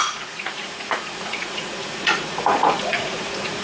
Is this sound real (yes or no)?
no